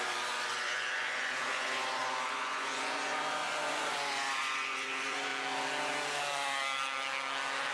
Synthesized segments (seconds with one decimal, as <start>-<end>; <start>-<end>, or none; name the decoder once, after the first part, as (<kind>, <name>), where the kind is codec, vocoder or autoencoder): 0.0-5.3 (vocoder, Vocos)